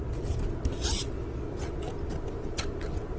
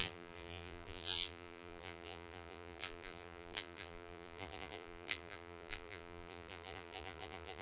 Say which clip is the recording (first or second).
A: first